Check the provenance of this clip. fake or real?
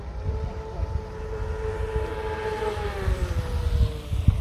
real